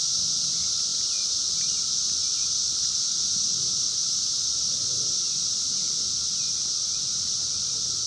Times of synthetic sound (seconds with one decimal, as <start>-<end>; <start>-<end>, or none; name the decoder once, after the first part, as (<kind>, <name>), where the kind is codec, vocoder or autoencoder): none